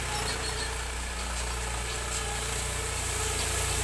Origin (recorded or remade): recorded